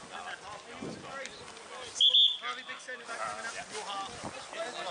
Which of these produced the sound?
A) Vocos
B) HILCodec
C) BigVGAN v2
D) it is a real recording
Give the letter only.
D